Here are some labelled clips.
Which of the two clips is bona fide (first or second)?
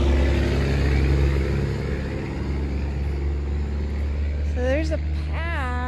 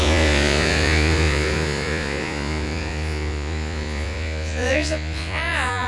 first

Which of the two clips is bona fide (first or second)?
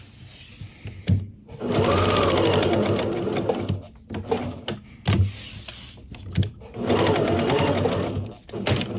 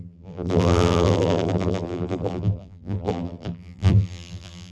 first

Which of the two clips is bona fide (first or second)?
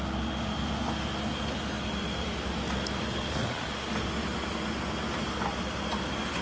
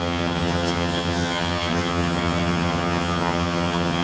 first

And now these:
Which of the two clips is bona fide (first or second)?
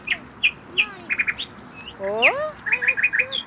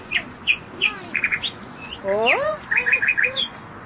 first